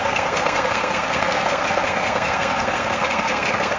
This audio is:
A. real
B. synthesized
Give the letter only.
B